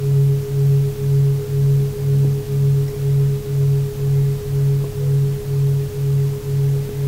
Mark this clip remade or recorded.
recorded